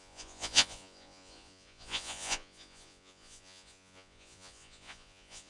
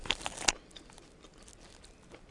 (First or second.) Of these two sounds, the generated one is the first